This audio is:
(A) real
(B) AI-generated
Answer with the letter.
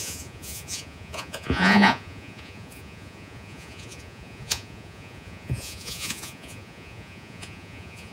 B